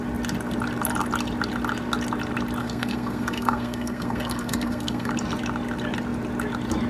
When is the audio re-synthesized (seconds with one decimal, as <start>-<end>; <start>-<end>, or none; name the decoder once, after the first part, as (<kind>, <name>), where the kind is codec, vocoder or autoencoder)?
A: 2.6-5.1 (codec, SNAC)